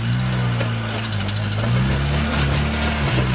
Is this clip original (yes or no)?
yes